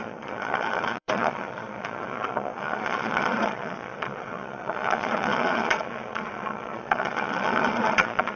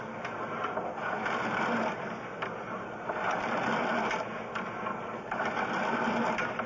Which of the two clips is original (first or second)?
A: second